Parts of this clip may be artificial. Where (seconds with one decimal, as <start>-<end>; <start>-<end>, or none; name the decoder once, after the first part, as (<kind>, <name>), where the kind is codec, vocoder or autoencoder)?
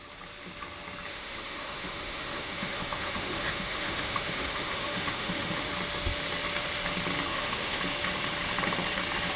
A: 1.1-5.7 (autoencoder, DAC-VAE); 7.3-7.8